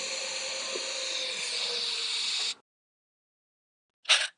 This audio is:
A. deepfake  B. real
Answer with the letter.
B